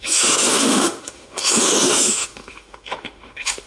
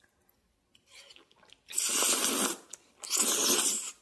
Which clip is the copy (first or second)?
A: first